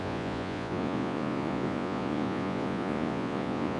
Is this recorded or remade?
remade